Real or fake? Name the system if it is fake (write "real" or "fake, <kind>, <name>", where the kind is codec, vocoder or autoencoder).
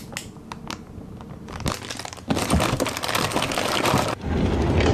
real